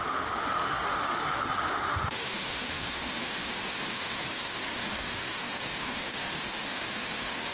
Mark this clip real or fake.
fake